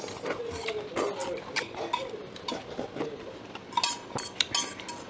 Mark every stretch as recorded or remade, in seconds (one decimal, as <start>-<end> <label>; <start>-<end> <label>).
0.0-5.1 recorded